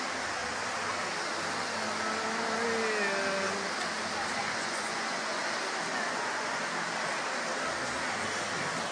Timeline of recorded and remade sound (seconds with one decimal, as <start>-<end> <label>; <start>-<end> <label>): 0.0-4.4 recorded; 4.4-5.4 remade; 5.4-5.9 recorded; 5.9-6.6 remade; 6.6-8.9 recorded

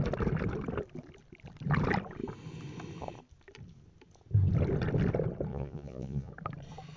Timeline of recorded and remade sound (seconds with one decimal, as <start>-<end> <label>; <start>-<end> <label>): 0.0-5.5 recorded; 5.5-6.3 remade; 6.3-7.0 recorded

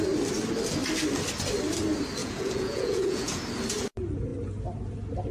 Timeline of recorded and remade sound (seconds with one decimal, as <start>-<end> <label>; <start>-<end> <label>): 0.0-2.2 recorded; 2.2-3.5 remade; 3.5-5.3 recorded

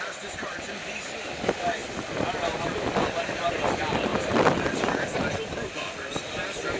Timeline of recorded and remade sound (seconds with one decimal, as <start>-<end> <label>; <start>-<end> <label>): 0.0-6.8 recorded